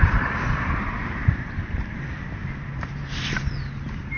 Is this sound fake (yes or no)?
yes